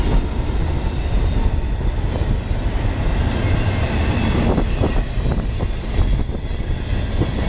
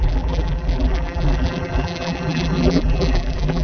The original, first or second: first